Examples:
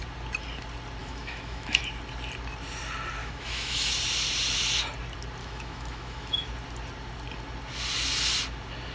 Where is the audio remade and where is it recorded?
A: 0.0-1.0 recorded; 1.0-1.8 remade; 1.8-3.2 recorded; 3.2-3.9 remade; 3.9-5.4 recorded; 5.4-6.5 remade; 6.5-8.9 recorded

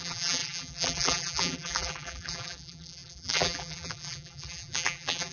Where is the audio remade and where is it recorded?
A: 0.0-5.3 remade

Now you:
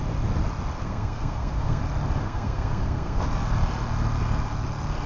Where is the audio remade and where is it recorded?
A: 0.0-0.8 recorded; 0.8-1.8 remade; 1.8-2.2 recorded; 2.2-3.2 remade; 3.2-5.1 recorded